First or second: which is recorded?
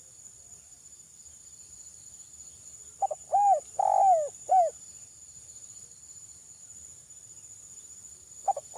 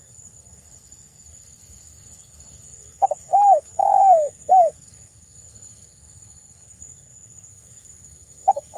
first